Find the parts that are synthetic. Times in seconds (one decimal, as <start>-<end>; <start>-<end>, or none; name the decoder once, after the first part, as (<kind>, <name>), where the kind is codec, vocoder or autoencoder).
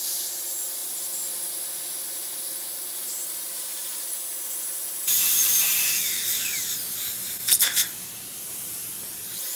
0.0-0.8 (vocoder, BigVGAN v2); 2.0-9.6